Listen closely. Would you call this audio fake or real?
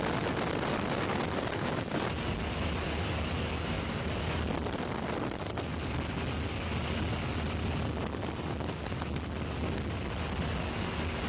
real